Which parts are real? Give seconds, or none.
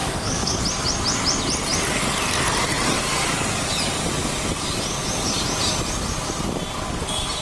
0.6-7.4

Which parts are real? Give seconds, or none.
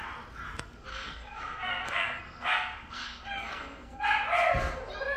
0.0-0.9; 4.0-5.2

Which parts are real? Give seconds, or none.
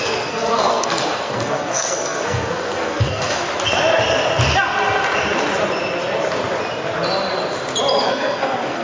3.4-8.0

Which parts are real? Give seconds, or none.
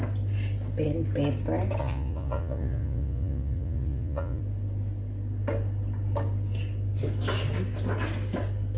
0.0-1.8; 4.4-8.8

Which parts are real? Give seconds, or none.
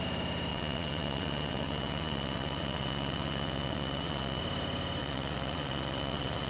0.0-0.5; 4.4-5.0